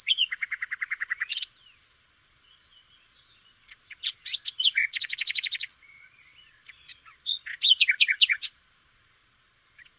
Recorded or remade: remade